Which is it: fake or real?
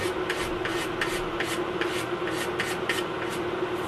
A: real